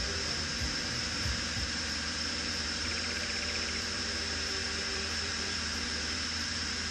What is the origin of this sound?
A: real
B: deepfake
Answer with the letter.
B